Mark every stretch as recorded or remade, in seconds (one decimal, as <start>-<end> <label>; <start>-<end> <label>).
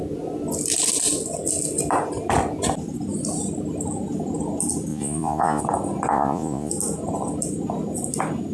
0.0-4.9 recorded; 4.9-5.6 remade; 5.6-6.1 recorded; 6.1-6.7 remade; 6.7-8.5 recorded